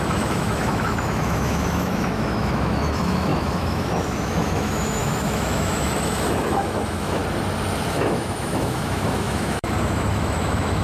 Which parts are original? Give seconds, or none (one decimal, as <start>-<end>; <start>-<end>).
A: 7.2-7.9